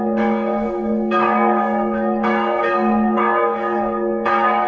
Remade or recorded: remade